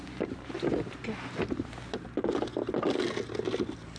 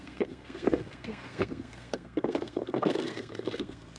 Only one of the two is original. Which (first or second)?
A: first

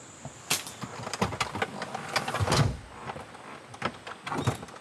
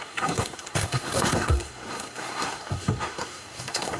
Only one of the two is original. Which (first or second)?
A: first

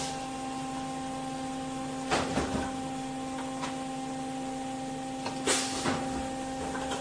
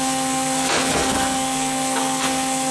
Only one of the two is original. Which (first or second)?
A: first